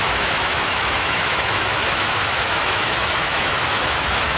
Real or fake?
fake